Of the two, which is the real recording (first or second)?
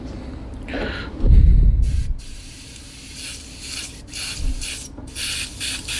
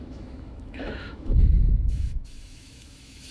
first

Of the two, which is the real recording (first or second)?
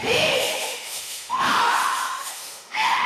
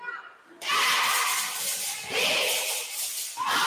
second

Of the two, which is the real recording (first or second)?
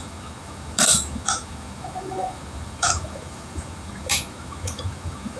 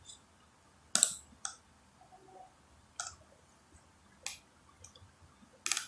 second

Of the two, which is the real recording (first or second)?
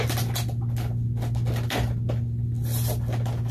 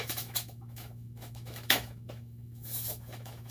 first